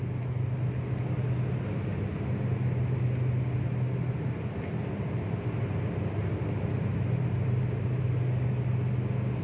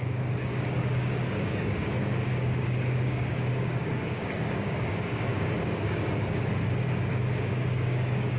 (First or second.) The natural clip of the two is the first